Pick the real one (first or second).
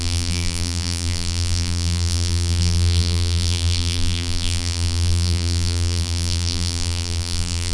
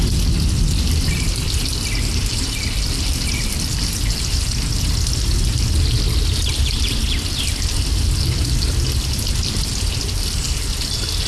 second